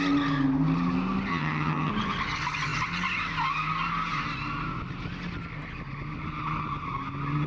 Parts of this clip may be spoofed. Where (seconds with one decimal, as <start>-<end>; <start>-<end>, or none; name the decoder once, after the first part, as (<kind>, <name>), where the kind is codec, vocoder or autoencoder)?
1.3-1.9 (vocoder, HiFi-GAN)